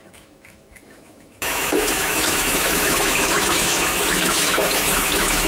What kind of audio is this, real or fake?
fake